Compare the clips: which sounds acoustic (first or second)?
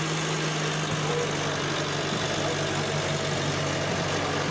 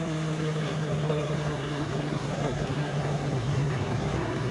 first